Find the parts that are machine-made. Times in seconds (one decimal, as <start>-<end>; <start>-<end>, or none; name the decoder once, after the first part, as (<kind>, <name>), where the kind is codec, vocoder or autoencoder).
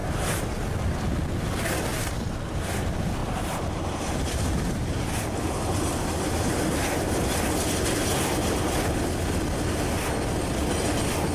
0.0-0.6 (vocoder, BigVGAN v2); 1.9-2.7; 3.2-5.4